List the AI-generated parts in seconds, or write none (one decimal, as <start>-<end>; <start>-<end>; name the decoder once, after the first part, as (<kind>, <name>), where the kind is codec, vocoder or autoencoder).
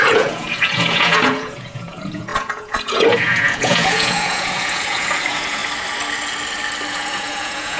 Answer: 0.0-5.6 (vocoder, Vocos); 6.9-7.8